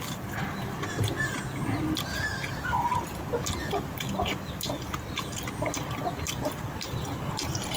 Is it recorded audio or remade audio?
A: recorded